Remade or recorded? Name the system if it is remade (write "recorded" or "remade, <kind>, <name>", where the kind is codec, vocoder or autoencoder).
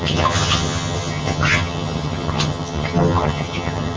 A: remade, vocoder, HiFi-GAN